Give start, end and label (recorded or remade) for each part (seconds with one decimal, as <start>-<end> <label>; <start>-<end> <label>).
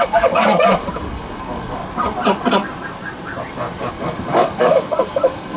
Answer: 0.0-1.8 remade; 1.8-3.9 recorded; 3.9-5.6 remade